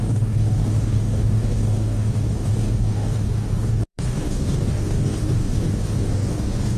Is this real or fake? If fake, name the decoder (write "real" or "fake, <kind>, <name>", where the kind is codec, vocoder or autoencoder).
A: fake, codec, DAC